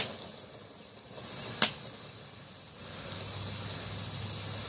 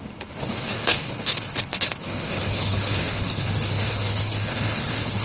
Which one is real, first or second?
first